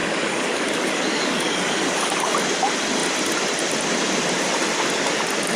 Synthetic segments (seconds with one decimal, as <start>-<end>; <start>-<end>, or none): 0.0-2.3